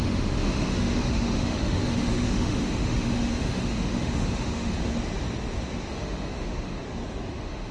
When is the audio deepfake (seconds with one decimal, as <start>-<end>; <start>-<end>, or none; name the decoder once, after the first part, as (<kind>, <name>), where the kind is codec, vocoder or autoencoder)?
0.0-4.8 (autoencoder, DAC-VAE); 5.9-6.8; 7.3-7.7